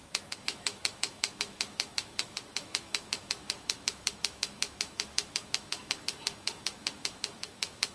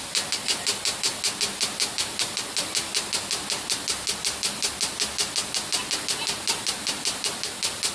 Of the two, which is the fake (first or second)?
first